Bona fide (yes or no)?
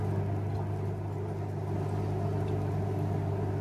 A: no